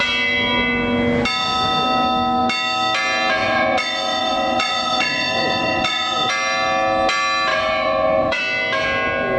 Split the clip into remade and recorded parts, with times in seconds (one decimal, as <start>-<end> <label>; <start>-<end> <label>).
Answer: 0.0-3.4 recorded; 3.4-6.3 remade; 6.3-7.5 recorded; 7.5-8.4 remade; 8.4-9.4 recorded